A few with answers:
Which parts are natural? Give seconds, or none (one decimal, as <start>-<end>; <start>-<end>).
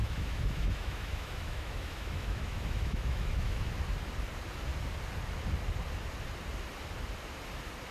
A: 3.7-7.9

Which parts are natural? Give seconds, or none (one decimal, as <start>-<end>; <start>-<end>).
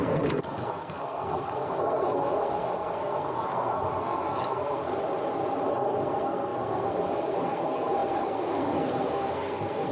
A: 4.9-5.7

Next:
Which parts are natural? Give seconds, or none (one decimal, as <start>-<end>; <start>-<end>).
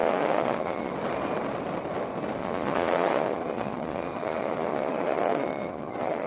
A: 0.9-2.4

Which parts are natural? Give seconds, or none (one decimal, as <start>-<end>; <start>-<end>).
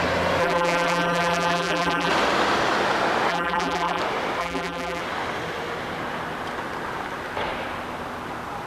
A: 0.0-0.4; 2.1-3.3; 4.0-4.4; 5.0-8.7